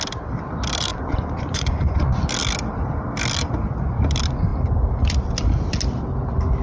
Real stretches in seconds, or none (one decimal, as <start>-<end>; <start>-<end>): 0.0-0.9; 2.2-6.6